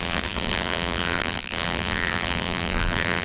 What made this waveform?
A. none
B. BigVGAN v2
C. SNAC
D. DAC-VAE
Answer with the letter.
B